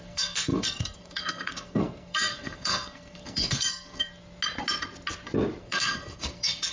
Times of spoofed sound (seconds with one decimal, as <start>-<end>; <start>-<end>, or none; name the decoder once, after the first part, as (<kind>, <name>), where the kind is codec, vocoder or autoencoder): 0.0-4.1 (codec, SNAC); 5.6-6.7

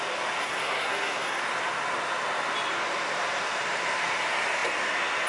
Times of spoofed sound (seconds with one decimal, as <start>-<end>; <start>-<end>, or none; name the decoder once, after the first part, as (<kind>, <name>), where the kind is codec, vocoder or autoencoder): 0.4-1.4 (codec, SNAC)

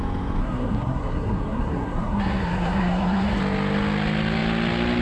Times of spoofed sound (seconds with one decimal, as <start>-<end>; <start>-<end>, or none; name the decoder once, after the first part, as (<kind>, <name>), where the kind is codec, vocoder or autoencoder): 0.4-3.4 (codec, SNAC)